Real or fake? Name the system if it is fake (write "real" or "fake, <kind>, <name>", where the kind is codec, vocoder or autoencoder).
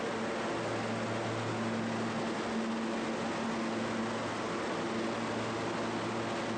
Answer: real